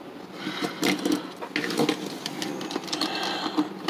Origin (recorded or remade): recorded